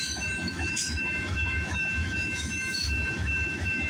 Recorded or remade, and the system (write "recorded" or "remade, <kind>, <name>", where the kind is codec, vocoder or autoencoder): remade, autoencoder, DAC-VAE